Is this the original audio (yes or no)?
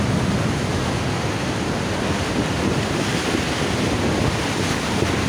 yes